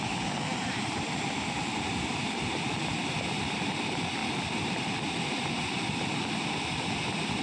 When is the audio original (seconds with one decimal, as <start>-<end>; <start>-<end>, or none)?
0.0-7.4